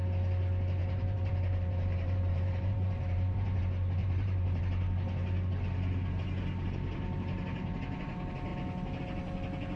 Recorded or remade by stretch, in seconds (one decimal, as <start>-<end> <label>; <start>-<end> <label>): 0.0-0.8 recorded; 0.8-3.6 remade; 3.6-4.0 recorded; 4.0-4.6 remade; 4.6-9.8 recorded